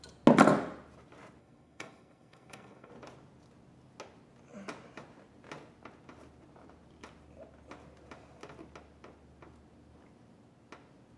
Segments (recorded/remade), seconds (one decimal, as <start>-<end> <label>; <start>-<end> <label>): 0.0-1.4 recorded; 1.4-2.9 remade; 2.9-11.2 recorded